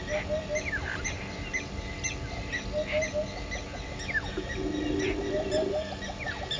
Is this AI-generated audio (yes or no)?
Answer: no